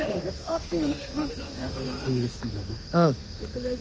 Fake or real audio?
fake